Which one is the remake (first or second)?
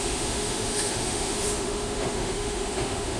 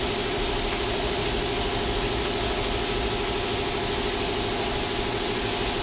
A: first